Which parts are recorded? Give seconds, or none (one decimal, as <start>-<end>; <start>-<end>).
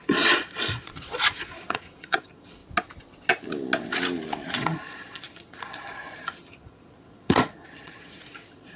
2.6-4.5